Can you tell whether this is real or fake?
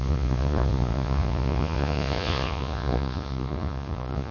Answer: fake